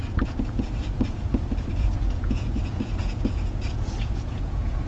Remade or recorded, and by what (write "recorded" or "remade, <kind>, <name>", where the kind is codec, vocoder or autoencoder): remade, vocoder, Vocos